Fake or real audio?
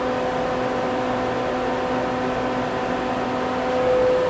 real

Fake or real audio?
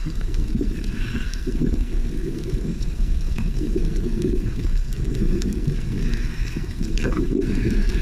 fake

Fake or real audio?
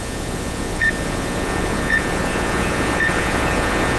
fake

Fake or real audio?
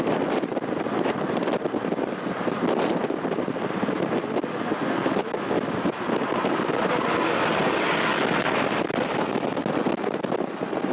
real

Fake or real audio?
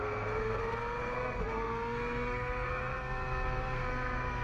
fake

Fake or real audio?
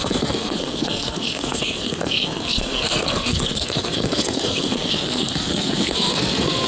fake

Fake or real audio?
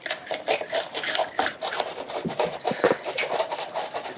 fake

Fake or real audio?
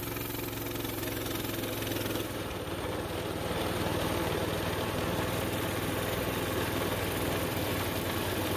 real